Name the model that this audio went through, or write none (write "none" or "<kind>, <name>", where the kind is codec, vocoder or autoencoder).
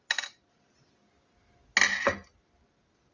none